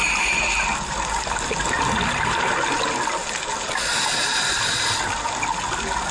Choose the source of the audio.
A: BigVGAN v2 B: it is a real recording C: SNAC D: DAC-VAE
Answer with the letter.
B